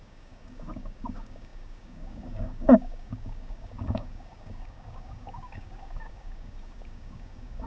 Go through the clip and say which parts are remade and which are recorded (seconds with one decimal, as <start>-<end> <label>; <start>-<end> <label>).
0.0-7.7 remade